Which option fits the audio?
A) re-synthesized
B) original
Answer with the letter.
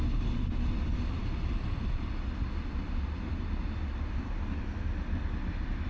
B